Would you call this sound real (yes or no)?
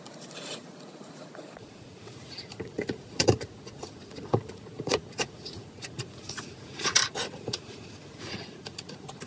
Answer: no